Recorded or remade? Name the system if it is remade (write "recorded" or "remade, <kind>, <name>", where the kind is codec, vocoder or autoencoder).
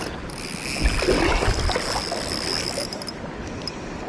recorded